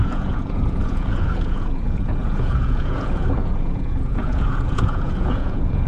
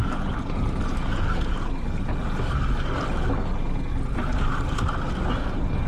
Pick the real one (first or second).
second